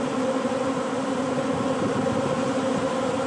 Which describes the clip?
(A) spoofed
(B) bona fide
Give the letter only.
B